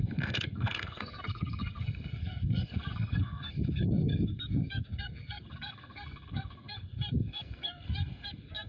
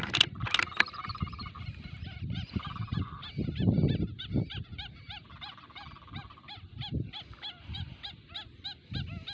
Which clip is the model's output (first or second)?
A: first